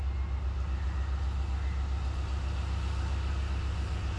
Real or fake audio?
real